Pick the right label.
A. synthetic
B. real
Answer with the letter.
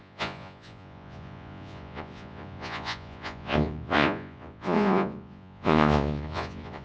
A